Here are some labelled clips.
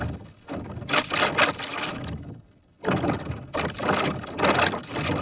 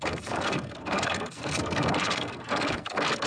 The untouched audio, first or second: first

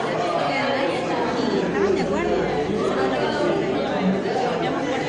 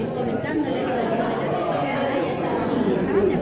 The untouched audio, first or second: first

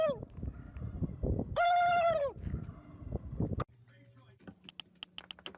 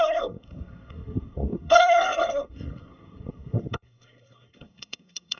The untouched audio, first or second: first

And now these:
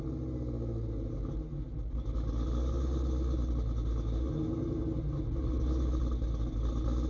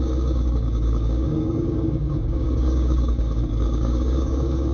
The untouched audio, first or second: first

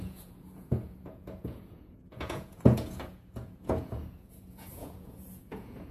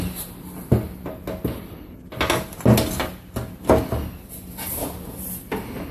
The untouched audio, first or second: second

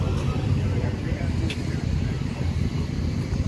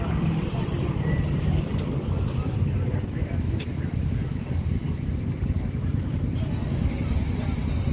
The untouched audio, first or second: first